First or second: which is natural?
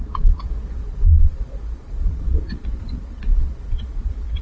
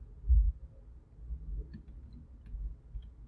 second